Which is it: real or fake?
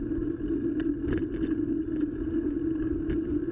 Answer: real